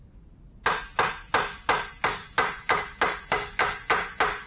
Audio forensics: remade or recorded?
recorded